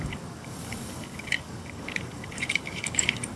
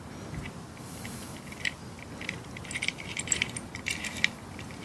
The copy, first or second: first